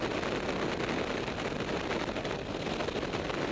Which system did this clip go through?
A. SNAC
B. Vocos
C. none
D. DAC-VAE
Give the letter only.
C